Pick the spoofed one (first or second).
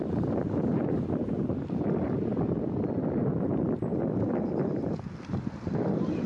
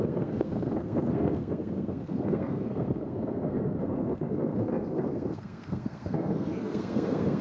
second